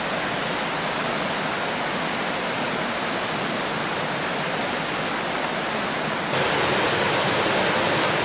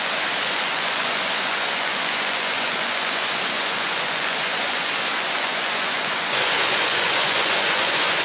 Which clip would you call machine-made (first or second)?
second